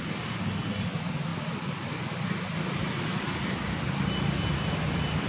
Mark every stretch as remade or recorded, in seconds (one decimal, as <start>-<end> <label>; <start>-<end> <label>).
0.0-5.3 recorded